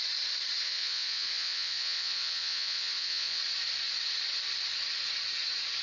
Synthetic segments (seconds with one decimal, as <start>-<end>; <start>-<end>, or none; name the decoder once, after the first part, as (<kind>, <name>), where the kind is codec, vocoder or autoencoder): 0.6-3.4 (vocoder, Vocos)